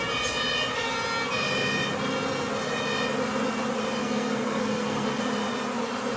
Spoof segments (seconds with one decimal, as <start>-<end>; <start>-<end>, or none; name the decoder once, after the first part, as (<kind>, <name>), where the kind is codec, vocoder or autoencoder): 4.0-5.2 (codec, SNAC)